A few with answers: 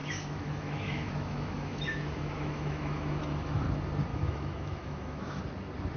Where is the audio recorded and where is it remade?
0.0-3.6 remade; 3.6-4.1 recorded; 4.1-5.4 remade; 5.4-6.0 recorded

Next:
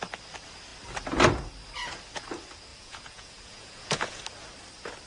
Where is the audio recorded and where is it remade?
0.0-2.7 recorded; 2.7-4.2 remade; 4.2-5.1 recorded

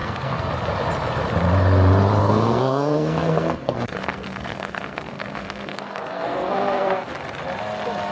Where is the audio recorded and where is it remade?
0.0-0.5 remade; 0.5-2.2 recorded; 2.2-7.1 remade; 7.1-8.1 recorded

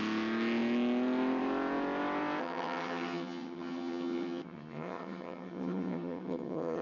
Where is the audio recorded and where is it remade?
0.0-2.4 recorded; 2.4-6.8 remade

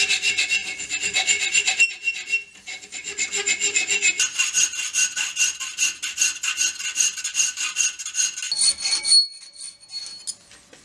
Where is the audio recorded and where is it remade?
0.0-0.6 recorded; 0.6-1.8 remade; 1.8-4.3 recorded; 4.3-5.8 remade; 5.8-10.8 recorded

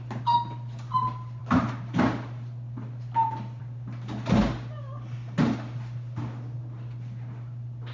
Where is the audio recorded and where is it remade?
0.0-7.9 recorded